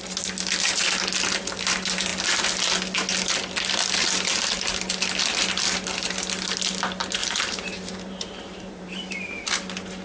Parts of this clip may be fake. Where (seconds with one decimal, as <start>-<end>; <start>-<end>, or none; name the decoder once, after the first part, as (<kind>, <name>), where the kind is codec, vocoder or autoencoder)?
7.2-9.5 (vocoder, BigVGAN v2)

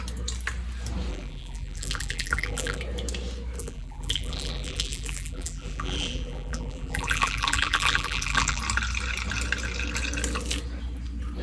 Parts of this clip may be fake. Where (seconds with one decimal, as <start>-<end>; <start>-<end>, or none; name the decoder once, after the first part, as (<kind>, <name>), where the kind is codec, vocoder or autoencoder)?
1.1-2.8 (vocoder, BigVGAN v2); 3.6-8.6